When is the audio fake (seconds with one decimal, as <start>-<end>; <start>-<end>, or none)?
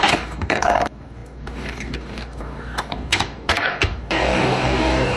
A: 0.0-5.2